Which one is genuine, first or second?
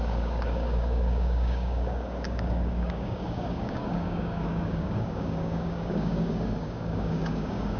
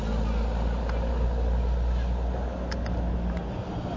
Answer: second